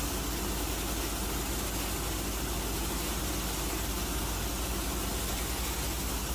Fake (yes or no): no